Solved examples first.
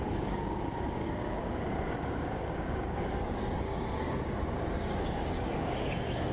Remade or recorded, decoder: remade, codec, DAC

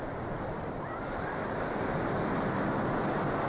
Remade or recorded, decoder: recorded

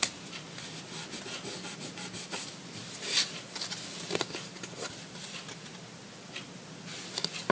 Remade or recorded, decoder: recorded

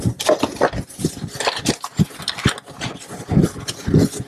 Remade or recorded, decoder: recorded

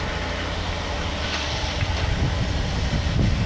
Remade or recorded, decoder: recorded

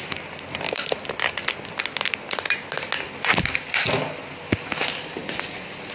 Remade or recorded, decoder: recorded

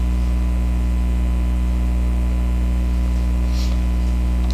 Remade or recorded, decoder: recorded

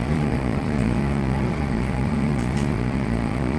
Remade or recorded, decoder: remade, vocoder, Vocos